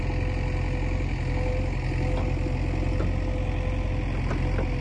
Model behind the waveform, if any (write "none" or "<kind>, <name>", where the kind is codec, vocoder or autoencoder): none